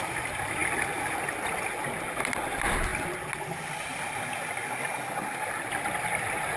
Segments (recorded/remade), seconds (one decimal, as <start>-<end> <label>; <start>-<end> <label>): 0.0-6.6 recorded